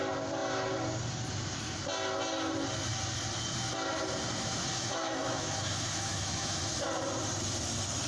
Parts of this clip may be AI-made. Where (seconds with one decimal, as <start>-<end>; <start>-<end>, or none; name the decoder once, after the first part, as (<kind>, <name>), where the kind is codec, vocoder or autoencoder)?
4.7-6.6 (autoencoder, DAC-VAE)